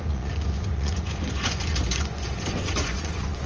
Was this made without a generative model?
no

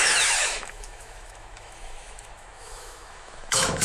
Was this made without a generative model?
no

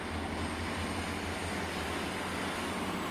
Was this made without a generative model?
yes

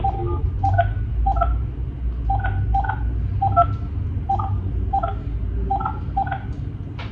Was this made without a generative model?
yes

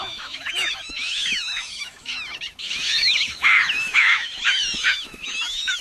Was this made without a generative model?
no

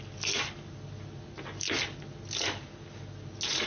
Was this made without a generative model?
yes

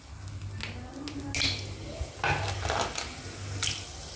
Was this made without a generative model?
yes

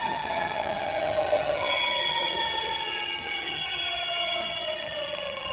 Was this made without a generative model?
no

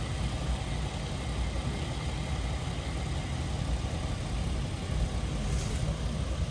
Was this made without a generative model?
yes